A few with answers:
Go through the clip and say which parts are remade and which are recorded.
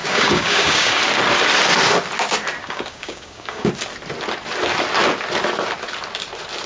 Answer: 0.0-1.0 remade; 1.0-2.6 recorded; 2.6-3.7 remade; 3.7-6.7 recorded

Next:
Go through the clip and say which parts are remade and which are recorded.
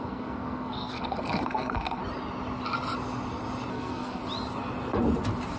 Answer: 0.0-2.0 remade; 2.0-3.7 recorded; 3.7-4.2 remade; 4.2-5.6 recorded